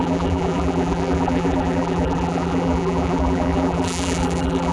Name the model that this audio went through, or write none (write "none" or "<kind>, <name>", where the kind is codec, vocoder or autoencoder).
vocoder, BigVGAN v2